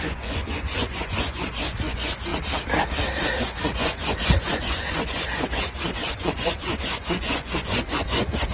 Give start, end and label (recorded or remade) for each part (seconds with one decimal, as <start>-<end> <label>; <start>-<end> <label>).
0.0-2.3 remade; 2.3-3.4 recorded; 3.4-8.5 remade